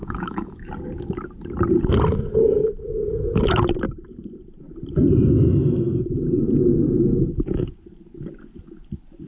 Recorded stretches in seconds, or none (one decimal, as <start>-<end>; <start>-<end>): 0.7-9.3